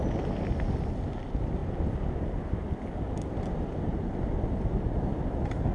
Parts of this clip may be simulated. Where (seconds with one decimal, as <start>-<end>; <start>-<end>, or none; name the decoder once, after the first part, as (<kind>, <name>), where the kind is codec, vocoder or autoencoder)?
none